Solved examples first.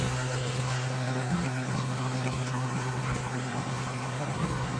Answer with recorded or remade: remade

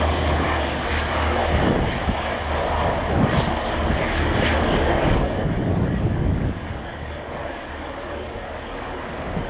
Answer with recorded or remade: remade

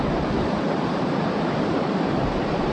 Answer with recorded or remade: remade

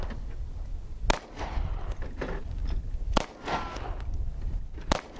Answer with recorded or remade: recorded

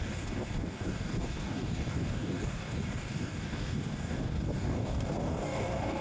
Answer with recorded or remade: remade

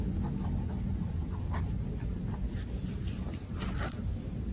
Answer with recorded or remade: recorded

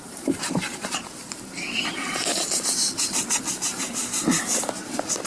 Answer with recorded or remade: remade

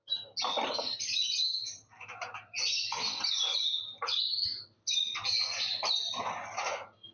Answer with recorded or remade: recorded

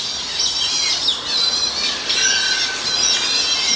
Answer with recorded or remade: recorded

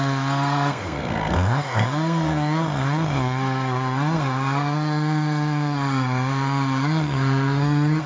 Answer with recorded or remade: remade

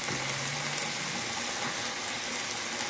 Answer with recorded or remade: recorded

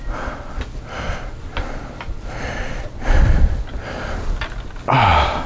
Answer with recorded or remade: recorded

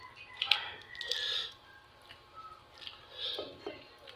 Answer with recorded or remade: recorded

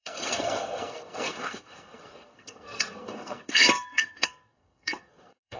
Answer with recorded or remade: remade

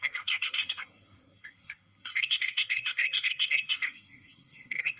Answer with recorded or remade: remade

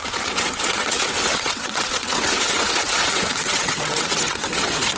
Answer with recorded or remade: remade